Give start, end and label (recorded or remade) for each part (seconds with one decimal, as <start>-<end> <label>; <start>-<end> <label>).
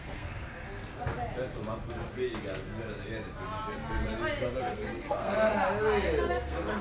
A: 0.0-0.5 remade; 0.5-4.6 recorded; 4.6-5.5 remade; 5.5-6.2 recorded; 6.2-6.8 remade